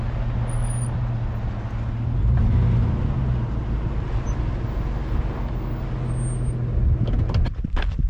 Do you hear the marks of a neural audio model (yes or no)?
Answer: no